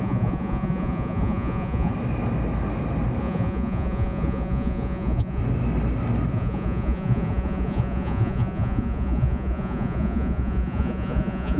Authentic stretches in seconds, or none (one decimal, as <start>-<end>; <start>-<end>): 1.9-3.2; 5.4-6.3